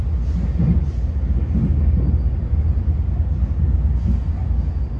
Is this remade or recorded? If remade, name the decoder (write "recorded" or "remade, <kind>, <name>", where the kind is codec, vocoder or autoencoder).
recorded